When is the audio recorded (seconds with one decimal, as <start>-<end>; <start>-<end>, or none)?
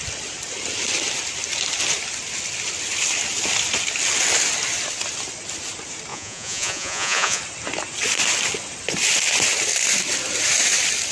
0.0-6.1; 7.4-11.1